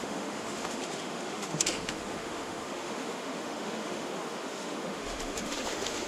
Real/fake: fake